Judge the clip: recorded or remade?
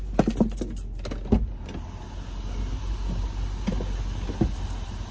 recorded